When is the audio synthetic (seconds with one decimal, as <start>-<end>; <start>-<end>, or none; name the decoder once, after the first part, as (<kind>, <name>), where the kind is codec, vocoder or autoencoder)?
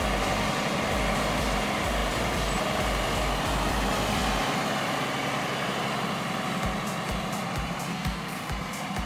7.9-8.4 (codec, SNAC)